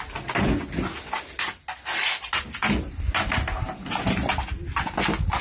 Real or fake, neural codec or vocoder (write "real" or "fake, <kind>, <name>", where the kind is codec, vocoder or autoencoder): real